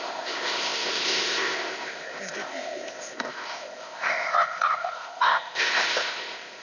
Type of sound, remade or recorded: remade